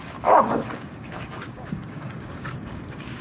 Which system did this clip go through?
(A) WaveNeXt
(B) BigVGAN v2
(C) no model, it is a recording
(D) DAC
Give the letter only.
D